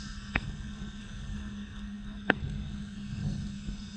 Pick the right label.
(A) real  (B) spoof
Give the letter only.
B